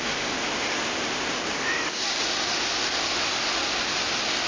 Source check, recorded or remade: recorded